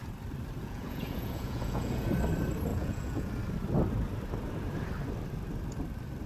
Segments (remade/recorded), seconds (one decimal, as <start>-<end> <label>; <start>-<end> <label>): 0.0-0.6 recorded; 0.6-2.1 remade; 2.1-2.7 recorded; 2.7-3.3 remade; 3.3-6.3 recorded